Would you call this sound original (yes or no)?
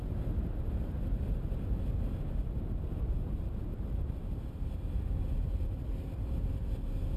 yes